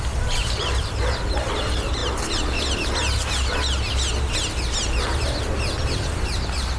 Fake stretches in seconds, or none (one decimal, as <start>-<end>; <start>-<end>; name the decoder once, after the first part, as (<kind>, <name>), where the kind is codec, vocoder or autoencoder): 0.0-2.0 (vocoder, BigVGAN v2); 6.1-6.8